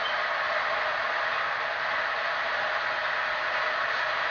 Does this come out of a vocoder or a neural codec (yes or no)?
no